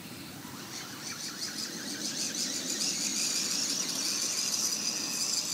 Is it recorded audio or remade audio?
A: recorded